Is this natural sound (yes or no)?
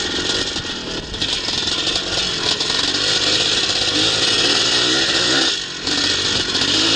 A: yes